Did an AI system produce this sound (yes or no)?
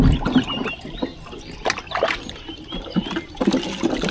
no